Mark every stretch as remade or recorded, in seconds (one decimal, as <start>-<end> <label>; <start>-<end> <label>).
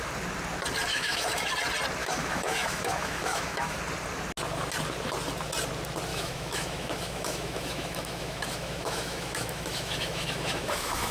0.0-0.9 recorded; 0.9-1.5 remade; 1.5-2.0 recorded; 2.0-3.8 remade; 3.8-6.1 recorded; 6.1-11.1 remade